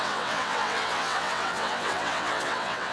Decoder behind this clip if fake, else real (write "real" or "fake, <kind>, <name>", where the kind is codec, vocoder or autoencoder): fake, vocoder, WaveNeXt